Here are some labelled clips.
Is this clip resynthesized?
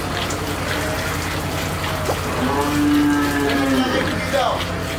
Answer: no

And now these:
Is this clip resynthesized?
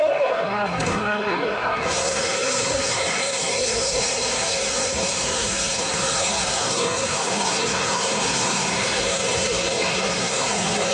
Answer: yes